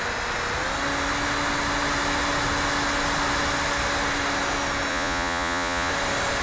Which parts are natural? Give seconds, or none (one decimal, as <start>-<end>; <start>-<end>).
0.0-4.9; 5.9-6.4